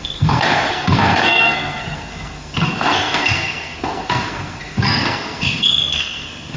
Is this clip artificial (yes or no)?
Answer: yes